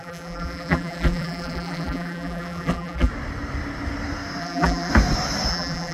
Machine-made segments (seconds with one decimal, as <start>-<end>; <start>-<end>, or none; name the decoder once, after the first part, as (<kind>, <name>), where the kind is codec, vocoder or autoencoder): 0.0-3.1 (vocoder, BigVGAN v2); 4.4-4.9; 5.5-5.9